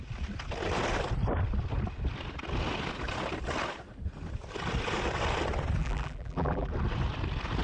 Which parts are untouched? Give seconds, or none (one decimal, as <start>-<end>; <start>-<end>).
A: 0.0-5.8; 6.7-7.6